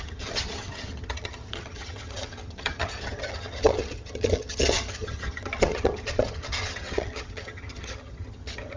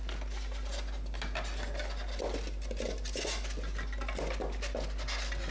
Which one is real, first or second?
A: second